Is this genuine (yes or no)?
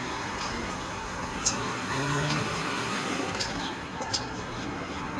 no